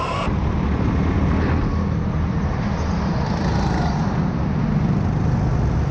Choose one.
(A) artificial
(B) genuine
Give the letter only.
B